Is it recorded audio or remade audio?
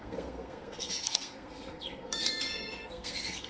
remade